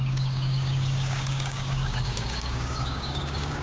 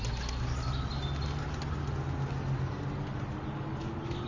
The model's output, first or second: first